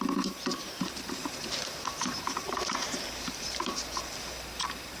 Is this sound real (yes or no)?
no